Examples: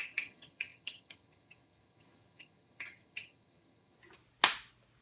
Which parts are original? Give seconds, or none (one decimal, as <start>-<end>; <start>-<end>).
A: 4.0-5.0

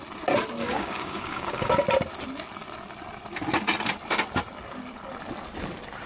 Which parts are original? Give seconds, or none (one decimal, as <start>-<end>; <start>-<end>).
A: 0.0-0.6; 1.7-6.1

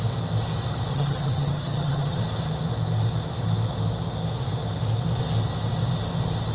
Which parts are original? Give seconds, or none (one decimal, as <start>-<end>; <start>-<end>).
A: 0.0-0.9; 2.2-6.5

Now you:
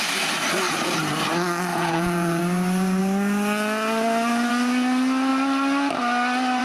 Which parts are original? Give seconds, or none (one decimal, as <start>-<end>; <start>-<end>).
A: 0.0-1.7; 2.4-6.6

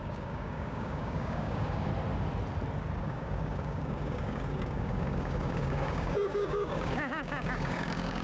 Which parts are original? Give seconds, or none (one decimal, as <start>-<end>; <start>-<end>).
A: 1.9-3.0

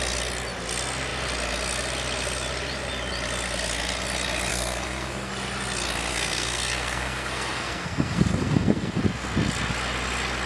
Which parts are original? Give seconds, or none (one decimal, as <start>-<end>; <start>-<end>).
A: 0.0-4.5; 5.3-6.1; 9.0-10.5

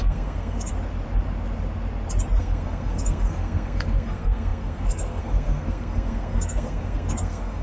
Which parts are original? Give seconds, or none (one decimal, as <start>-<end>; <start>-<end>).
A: 0.7-2.4

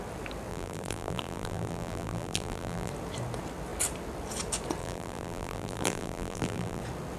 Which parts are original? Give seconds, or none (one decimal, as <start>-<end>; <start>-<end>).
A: 0.0-0.5; 2.9-4.8; 6.8-7.2